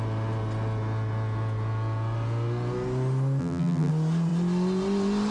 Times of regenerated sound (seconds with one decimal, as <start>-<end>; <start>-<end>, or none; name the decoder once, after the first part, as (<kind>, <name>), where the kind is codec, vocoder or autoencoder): 3.4-3.9 (vocoder, BigVGAN v2)